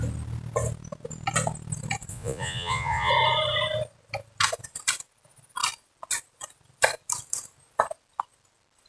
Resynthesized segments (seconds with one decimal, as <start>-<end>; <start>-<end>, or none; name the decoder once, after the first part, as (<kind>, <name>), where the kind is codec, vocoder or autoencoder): 2.1-3.1 (vocoder, Vocos)